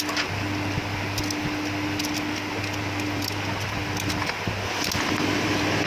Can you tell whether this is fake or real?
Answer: real